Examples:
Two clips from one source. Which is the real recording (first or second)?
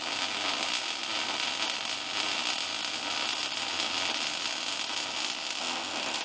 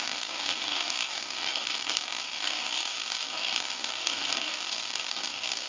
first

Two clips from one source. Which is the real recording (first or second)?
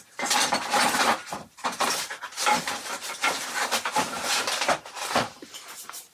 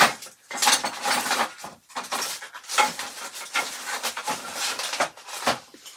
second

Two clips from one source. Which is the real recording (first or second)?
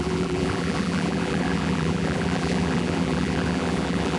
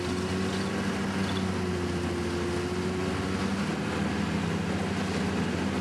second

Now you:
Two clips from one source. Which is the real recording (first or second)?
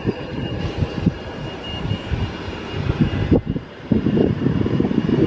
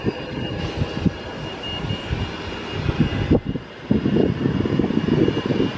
second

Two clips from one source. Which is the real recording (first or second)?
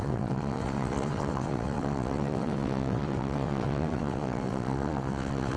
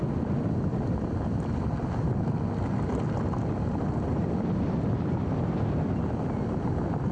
second